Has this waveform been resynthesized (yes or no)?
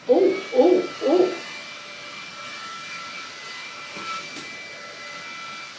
no